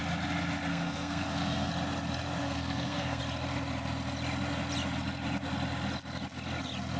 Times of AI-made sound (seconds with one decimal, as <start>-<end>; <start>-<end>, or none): 0.7-1.7; 2.4-3.2